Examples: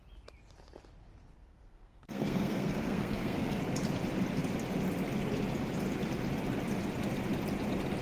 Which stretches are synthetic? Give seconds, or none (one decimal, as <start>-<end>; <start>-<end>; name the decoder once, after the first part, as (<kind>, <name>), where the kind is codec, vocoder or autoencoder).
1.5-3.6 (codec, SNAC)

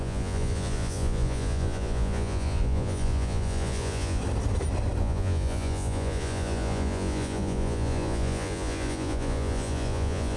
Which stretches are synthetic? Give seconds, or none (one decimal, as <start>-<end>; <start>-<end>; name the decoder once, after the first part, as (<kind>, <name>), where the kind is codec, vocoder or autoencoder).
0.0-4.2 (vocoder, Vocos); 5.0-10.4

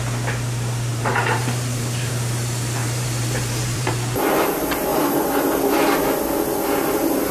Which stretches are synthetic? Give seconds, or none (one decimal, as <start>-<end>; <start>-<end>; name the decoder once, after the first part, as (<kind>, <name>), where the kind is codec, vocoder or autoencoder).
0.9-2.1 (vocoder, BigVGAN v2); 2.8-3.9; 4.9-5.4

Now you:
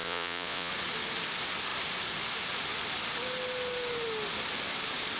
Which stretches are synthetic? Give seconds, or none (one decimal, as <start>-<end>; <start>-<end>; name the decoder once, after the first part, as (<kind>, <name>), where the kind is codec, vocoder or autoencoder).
0.0-0.7 (vocoder, Vocos)

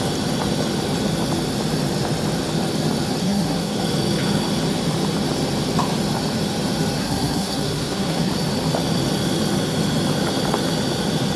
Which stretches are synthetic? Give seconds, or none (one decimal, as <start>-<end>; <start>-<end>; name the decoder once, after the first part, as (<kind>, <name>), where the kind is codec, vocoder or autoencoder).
3.2-3.8 (codec, SNAC); 7.0-8.3